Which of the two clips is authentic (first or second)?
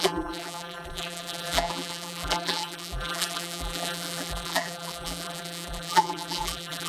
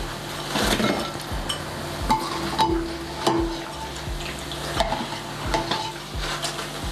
second